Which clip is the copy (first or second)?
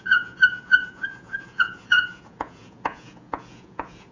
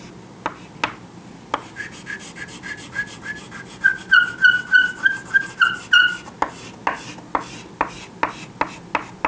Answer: first